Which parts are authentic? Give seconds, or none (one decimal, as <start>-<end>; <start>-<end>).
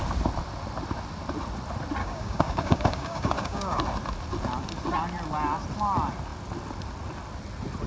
0.0-2.0; 3.8-7.9